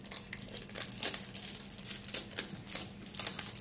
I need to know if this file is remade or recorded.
recorded